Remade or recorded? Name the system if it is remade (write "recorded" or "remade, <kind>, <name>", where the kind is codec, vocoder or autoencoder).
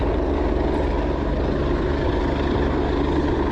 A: recorded